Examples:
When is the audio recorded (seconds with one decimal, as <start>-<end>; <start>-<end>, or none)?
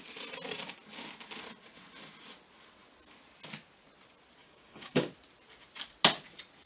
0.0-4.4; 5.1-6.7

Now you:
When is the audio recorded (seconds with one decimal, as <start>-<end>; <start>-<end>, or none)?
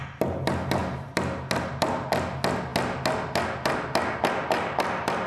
0.0-5.3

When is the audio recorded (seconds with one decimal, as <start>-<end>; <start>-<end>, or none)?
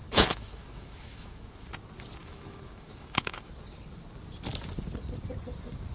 1.7-2.2; 3.5-5.9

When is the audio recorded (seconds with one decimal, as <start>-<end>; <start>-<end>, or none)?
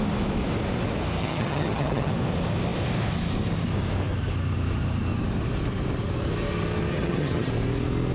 0.0-1.2; 2.1-6.9; 7.5-8.1